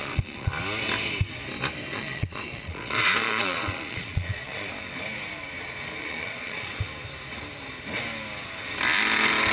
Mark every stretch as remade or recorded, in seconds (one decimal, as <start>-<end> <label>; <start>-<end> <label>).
0.0-0.5 remade; 0.5-1.9 recorded; 1.9-4.7 remade; 4.7-6.0 recorded; 6.0-6.8 remade; 6.8-9.5 recorded